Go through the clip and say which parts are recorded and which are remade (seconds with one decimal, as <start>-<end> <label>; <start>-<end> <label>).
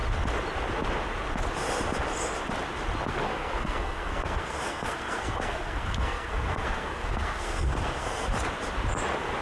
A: 0.0-3.1 recorded; 3.1-8.3 remade; 8.3-9.4 recorded